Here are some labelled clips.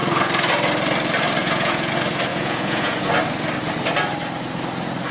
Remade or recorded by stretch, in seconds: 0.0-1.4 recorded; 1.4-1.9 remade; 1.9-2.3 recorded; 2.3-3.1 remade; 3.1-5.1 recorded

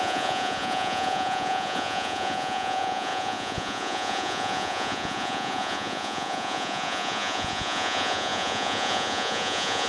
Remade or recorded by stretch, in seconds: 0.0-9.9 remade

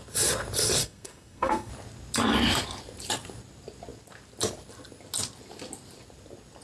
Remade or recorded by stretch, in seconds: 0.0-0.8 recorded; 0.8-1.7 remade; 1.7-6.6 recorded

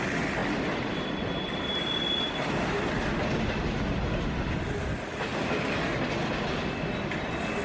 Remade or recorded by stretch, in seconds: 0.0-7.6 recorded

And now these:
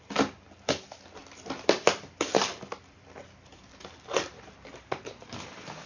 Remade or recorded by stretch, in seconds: 0.0-1.2 recorded; 1.2-4.7 remade; 4.7-5.9 recorded

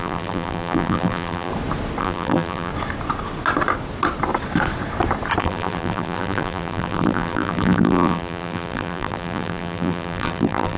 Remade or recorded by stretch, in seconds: 0.0-1.5 remade; 1.5-2.0 recorded; 2.0-2.7 remade; 2.7-5.4 recorded; 5.4-10.8 remade